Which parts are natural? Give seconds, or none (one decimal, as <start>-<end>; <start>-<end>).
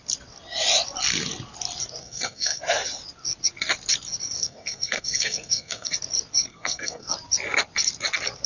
0.0-2.0; 2.6-4.4; 5.9-6.5; 7.1-8.5